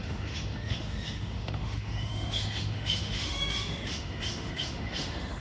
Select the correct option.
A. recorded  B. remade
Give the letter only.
B